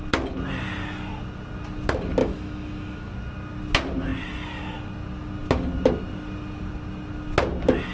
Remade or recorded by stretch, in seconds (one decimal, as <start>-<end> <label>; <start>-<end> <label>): 0.0-2.2 recorded; 2.2-3.1 remade; 3.1-7.9 recorded